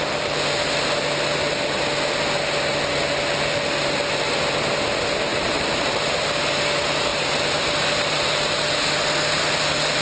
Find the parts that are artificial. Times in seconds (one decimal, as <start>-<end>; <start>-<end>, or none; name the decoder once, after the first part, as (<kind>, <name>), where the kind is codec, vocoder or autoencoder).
5.3-6.3 (vocoder, BigVGAN v2); 7.1-8.2